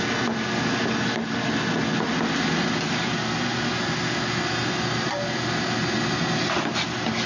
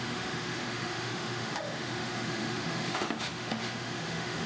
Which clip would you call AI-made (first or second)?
second